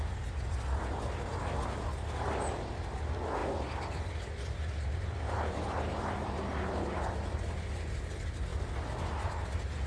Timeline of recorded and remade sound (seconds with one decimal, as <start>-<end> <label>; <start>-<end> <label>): 0.0-9.9 recorded